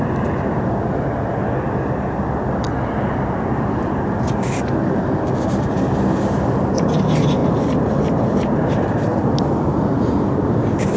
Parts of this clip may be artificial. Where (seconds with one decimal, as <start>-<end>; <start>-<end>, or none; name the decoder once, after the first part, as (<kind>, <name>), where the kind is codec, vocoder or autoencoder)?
none